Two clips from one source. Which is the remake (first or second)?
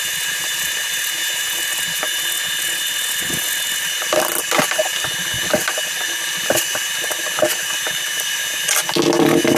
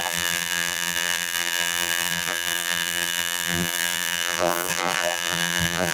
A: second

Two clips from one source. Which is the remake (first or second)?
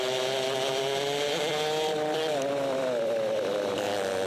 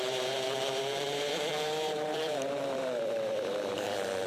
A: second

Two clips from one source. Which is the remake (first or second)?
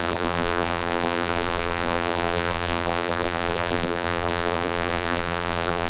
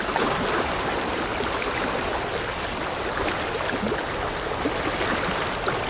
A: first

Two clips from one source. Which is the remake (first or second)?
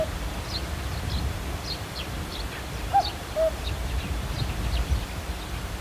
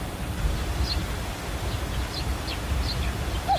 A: first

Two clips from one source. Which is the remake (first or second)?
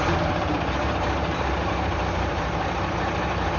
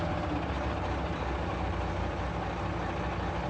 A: first